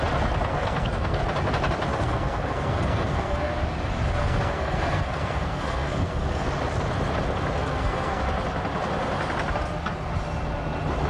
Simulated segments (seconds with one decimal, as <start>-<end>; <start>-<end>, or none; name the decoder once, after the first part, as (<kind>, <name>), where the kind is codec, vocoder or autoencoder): 0.5-1.2 (codec, SNAC); 1.9-3.5; 4.2-6.5; 7.6-8.2

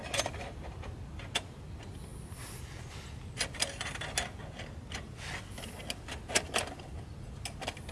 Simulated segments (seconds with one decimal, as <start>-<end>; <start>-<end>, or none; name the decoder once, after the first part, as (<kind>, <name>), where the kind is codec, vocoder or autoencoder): none

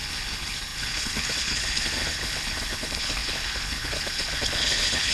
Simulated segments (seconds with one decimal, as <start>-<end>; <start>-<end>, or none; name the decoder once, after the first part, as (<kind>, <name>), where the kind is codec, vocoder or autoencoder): 0.0-5.1 (codec, HILCodec)

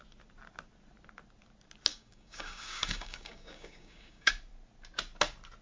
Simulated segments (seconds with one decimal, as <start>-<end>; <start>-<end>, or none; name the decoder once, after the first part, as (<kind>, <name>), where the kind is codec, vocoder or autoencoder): 1.9-4.3 (codec, DAC)

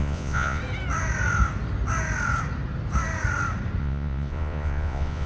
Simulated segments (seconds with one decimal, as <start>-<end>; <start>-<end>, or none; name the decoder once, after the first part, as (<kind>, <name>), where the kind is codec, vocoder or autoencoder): 0.0-0.6 (vocoder, Vocos); 3.8-5.3

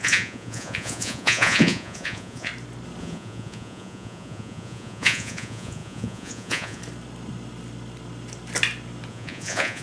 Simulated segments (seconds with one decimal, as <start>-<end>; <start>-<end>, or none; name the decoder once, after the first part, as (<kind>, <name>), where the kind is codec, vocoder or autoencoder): 0.0-2.5 (vocoder, Vocos); 3.0-6.8; 9.1-9.8

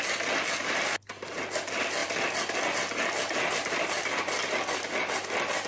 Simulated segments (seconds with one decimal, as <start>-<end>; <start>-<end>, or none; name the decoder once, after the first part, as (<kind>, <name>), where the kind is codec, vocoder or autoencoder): none

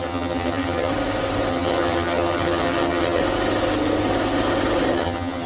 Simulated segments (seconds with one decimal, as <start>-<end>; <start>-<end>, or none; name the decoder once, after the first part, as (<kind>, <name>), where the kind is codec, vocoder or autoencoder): 0.0-0.9 (vocoder, HiFi-GAN); 1.5-3.2; 4.9-5.5